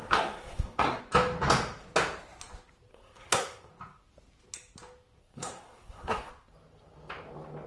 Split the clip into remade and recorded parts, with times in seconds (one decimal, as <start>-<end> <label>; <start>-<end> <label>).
0.0-1.0 remade; 1.0-2.9 recorded; 2.9-3.7 remade; 3.7-5.2 recorded; 5.2-6.3 remade; 6.3-7.7 recorded